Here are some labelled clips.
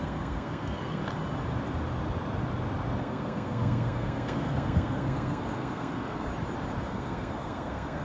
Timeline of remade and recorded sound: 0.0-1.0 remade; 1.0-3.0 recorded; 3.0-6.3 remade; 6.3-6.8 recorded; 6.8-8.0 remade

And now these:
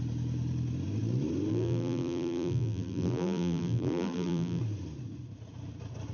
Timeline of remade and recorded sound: 0.0-1.5 recorded; 1.5-4.6 remade; 4.6-6.1 recorded

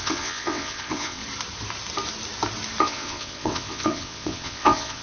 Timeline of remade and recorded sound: 0.0-1.2 remade; 1.2-2.8 recorded; 2.8-5.0 remade